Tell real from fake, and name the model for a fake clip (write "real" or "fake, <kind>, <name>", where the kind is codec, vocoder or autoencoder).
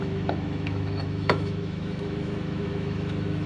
fake, autoencoder, DAC-VAE